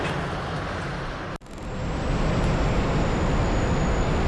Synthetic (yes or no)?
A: no